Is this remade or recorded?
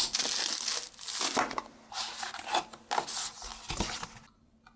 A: recorded